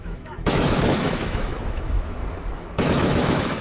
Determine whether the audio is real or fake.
fake